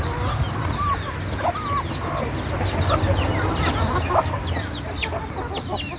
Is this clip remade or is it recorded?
recorded